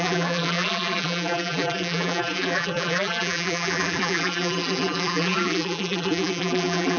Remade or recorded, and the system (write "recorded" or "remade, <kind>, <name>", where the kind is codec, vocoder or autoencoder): remade, vocoder, BigVGAN v2